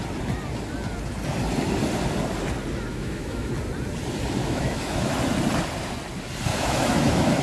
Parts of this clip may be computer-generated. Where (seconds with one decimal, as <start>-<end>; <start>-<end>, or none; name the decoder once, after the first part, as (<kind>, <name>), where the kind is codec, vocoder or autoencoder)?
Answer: 2.9-3.5 (autoencoder, DAC-VAE); 4.4-5.2; 6.5-7.4